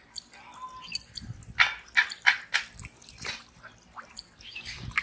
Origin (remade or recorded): remade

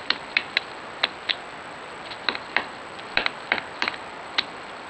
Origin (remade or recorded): remade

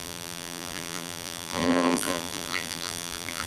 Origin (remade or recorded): remade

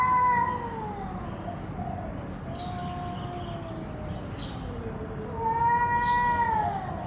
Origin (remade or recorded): recorded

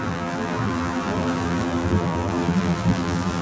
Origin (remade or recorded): remade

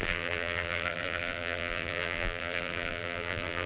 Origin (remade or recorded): remade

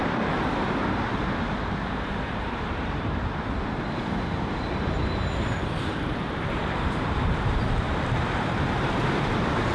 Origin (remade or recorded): remade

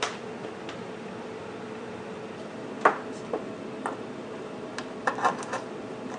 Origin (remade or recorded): remade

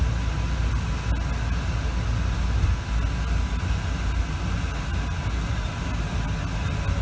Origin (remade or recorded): recorded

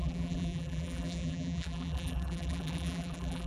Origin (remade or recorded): remade